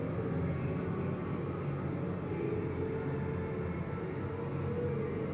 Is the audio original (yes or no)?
yes